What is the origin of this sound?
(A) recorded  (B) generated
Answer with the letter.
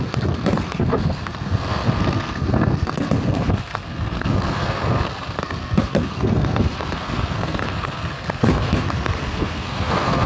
B